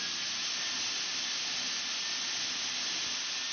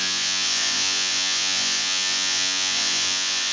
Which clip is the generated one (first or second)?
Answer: second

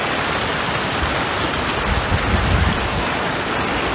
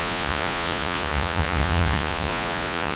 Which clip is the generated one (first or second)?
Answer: second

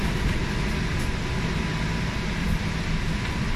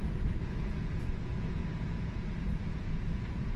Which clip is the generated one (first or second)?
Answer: second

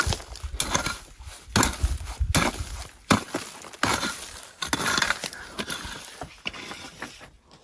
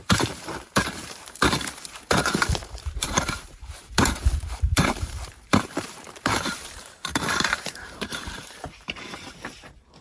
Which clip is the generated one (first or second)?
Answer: second